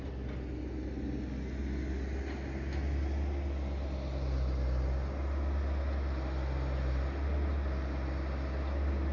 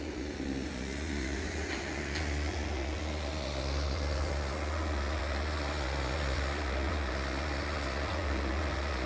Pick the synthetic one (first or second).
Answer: second